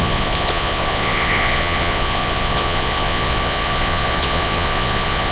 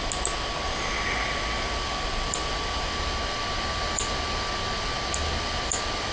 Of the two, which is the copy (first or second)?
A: first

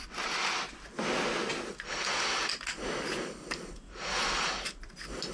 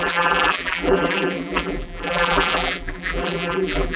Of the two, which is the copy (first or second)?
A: second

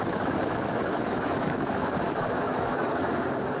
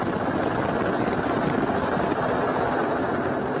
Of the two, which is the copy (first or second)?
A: first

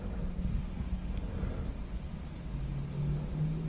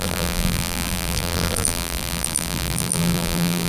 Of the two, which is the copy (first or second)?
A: second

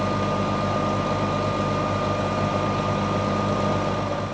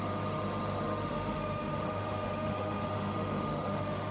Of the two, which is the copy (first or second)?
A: second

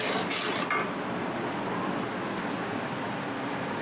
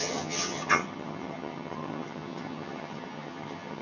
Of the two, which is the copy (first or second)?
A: second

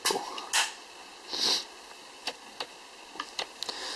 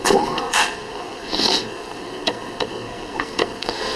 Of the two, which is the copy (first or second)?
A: second